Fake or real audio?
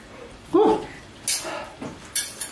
real